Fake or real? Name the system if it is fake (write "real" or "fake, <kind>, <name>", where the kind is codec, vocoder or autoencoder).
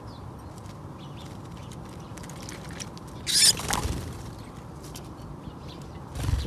real